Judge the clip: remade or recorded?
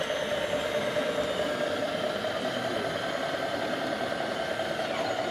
remade